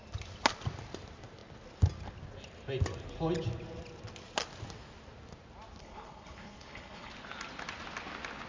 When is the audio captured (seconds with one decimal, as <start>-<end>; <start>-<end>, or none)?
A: 0.0-5.8; 7.1-8.5